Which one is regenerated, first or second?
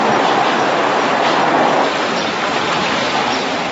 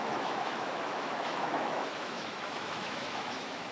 second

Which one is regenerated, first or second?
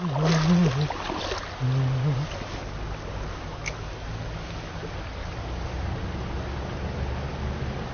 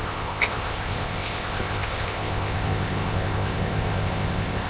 second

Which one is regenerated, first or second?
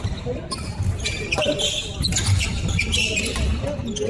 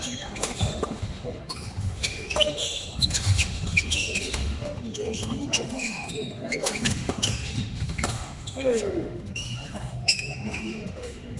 second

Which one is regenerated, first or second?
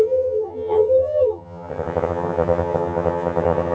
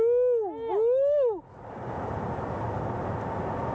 first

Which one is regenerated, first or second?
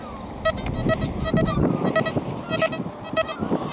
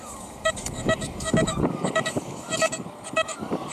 second